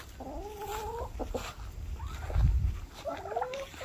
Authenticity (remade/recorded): recorded